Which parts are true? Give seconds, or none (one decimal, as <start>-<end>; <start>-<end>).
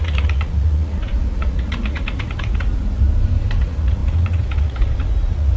3.0-3.6